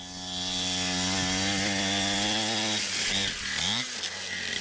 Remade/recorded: recorded